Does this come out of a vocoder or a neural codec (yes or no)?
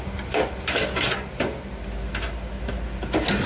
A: no